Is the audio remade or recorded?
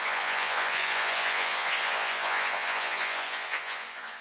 remade